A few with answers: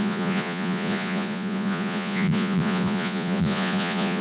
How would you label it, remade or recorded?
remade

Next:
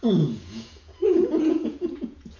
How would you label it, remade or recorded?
remade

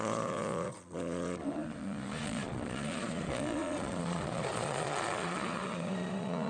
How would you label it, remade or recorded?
remade